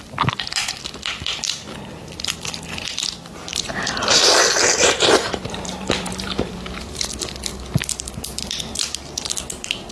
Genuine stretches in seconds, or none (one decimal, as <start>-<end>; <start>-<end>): 0.0-3.5; 7.1-9.9